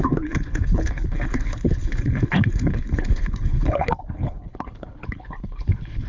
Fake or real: fake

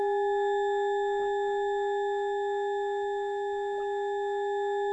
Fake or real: real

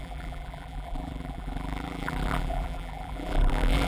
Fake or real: fake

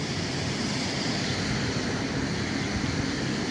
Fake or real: real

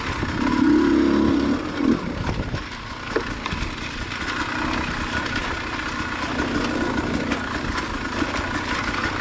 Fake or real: real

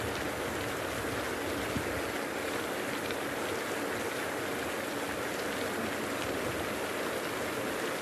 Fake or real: real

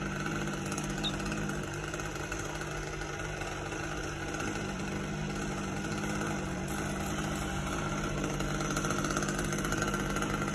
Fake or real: real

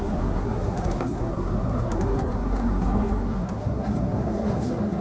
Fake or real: fake